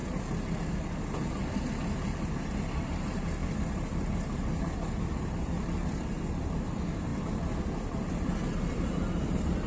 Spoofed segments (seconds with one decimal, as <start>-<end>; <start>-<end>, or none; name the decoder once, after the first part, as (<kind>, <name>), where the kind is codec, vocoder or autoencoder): 3.4-6.4 (vocoder, BigVGAN v2)